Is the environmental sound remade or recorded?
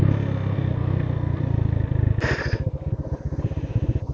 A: recorded